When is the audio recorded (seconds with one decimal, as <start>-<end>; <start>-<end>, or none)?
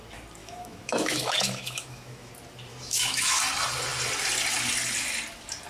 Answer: 0.0-0.4; 2.3-2.7; 3.4-5.7